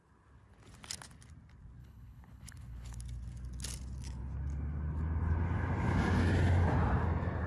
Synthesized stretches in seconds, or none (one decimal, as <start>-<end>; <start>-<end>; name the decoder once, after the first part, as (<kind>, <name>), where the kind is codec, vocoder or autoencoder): 1.8-3.0 (codec, HILCodec)